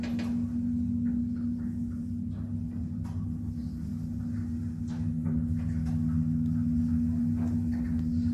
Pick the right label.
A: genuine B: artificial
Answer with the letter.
A